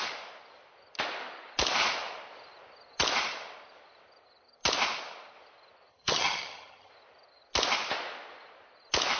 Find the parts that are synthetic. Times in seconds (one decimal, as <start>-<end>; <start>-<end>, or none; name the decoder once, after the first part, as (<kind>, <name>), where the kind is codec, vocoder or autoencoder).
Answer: 5.9-6.9 (vocoder, HiFi-GAN)